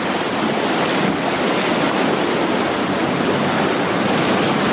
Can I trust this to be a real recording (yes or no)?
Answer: yes